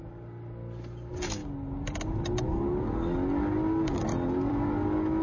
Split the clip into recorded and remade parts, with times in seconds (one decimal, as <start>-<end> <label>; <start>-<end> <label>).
0.0-5.2 recorded